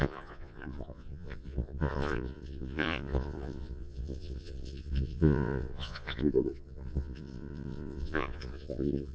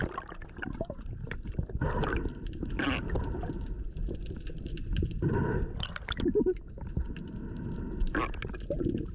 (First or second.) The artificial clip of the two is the first